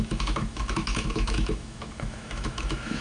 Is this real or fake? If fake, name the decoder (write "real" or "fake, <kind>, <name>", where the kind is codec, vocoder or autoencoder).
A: fake, autoencoder, DAC-VAE